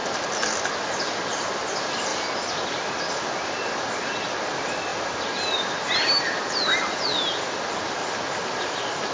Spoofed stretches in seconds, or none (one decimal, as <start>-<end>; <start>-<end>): none